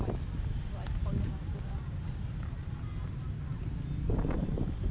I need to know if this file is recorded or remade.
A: recorded